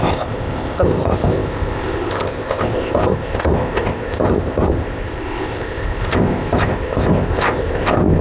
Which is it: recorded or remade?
remade